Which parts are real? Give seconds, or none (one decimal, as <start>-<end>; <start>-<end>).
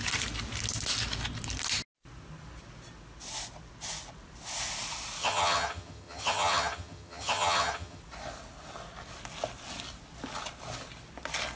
0.0-5.2; 8.0-11.6